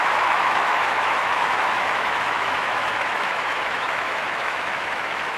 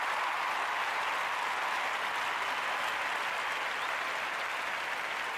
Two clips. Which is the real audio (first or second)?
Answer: second